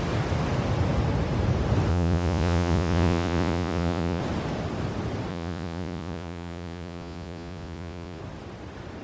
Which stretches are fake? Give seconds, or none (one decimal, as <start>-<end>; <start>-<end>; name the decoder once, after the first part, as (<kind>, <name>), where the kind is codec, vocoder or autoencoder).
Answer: 1.9-4.2 (vocoder, Vocos); 5.3-8.2